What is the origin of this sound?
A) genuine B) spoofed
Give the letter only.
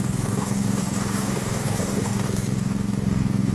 B